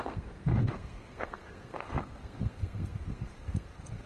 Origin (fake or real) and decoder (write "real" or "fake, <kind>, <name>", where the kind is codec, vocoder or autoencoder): fake, codec, SNAC